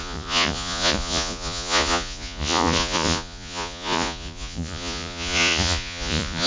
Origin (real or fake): fake